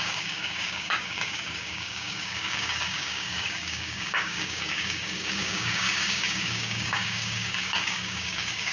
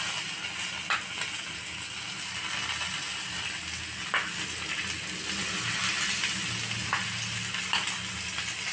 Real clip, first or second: second